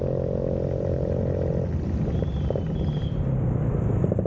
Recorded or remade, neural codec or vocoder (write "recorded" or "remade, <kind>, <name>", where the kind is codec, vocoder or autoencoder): recorded